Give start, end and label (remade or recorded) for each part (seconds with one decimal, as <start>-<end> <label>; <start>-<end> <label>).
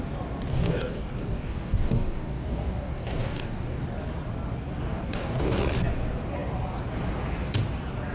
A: 0.0-0.5 recorded; 0.5-3.8 remade; 3.8-4.8 recorded; 4.8-5.6 remade; 5.6-8.1 recorded